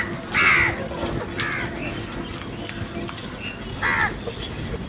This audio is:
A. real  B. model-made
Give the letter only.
A